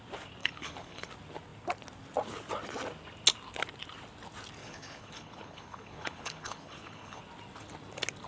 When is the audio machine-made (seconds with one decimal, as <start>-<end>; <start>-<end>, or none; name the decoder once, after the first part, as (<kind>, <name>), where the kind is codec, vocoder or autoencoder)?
0.4-1.1 (codec, HILCodec); 4.6-7.2